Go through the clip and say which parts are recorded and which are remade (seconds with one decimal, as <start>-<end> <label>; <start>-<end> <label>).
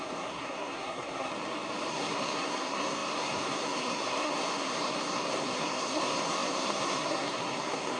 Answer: 0.0-1.3 remade; 1.3-1.9 recorded; 1.9-8.0 remade